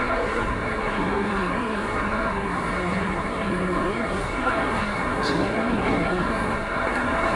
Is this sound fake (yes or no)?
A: yes